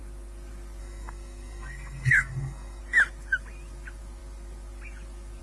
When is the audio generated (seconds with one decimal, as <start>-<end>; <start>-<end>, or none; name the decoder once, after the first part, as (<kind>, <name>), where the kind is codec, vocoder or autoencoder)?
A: 0.8-2.8 (codec, SNAC)